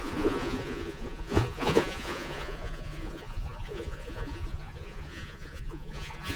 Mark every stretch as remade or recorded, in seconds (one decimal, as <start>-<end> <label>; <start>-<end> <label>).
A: 0.0-6.4 remade